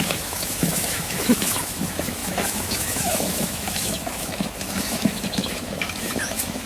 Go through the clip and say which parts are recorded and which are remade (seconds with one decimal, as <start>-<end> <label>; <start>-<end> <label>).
0.0-6.7 remade

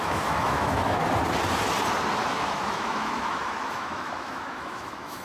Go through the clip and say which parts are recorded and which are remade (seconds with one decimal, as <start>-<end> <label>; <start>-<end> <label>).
0.0-1.0 remade; 1.0-2.3 recorded; 2.3-5.2 remade

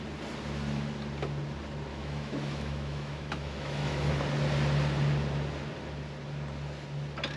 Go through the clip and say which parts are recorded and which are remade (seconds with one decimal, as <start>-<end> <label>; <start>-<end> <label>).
0.0-1.9 recorded; 1.9-4.1 remade; 4.1-7.4 recorded

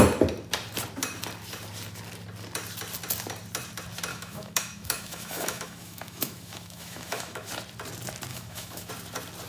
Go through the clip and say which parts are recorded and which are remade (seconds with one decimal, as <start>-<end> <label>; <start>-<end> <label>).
0.0-4.1 recorded; 4.1-7.5 remade; 7.5-8.3 recorded; 8.3-8.9 remade; 8.9-9.5 recorded

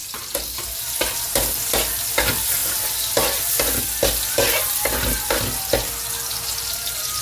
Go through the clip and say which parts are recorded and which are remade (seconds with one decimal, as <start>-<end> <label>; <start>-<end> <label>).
0.0-7.2 recorded

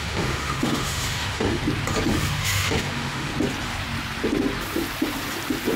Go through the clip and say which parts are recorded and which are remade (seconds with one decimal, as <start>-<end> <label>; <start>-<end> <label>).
0.0-1.6 remade; 1.6-2.1 recorded; 2.1-3.3 remade; 3.3-5.8 recorded

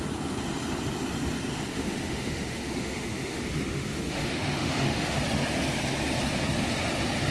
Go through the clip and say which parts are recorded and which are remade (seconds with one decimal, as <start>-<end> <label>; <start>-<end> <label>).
0.0-1.7 recorded; 1.7-5.2 remade; 5.2-7.3 recorded